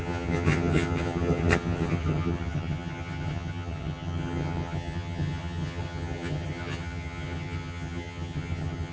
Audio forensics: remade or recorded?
remade